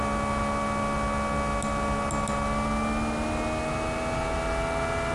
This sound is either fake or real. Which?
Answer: real